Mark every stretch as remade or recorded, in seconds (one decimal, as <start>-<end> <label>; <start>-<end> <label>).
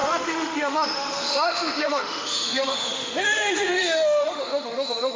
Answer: 0.0-5.2 remade